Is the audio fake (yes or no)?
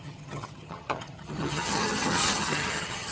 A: yes